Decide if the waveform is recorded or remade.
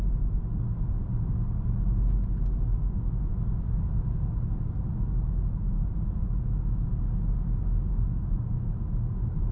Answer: recorded